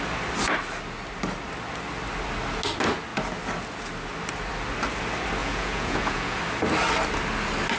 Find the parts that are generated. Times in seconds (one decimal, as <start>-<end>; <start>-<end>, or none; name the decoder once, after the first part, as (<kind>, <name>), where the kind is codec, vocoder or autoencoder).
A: 5.4-6.4 (vocoder, Vocos)